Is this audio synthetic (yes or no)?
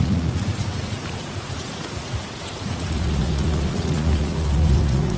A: yes